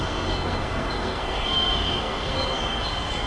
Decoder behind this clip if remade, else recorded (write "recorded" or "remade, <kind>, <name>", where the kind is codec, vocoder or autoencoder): remade, codec, SNAC